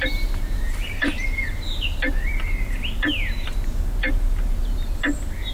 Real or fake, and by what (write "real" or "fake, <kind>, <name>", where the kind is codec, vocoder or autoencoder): fake, vocoder, BigVGAN v2